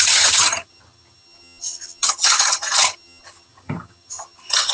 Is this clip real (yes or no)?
no